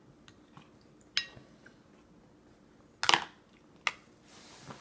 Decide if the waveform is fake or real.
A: real